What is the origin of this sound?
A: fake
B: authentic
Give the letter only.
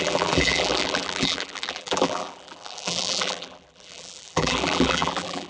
A